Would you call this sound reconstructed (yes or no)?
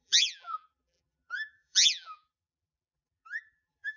yes